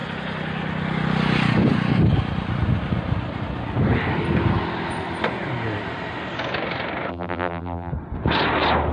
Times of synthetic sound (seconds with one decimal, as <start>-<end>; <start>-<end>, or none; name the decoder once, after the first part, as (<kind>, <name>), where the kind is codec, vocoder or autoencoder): 7.1-7.9 (vocoder, BigVGAN v2)